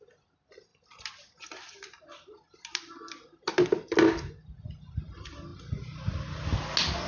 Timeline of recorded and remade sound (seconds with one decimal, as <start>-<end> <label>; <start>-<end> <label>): 0.0-7.1 recorded